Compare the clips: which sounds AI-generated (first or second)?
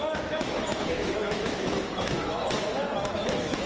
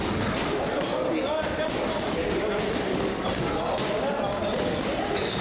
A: first